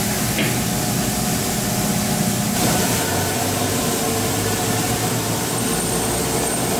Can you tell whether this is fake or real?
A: real